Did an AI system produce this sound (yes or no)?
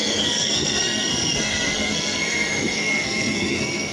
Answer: yes